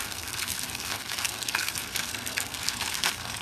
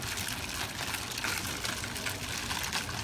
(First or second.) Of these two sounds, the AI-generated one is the first